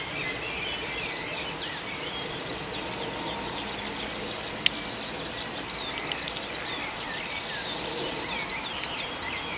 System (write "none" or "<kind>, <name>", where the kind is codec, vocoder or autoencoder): none